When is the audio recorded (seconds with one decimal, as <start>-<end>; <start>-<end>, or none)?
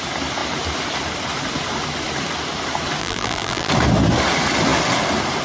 0.0-3.0; 3.7-5.4